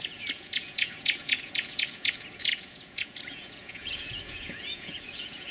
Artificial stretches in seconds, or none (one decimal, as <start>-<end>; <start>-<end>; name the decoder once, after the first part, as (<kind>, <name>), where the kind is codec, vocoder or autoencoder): 0.0-5.5 (vocoder, Vocos)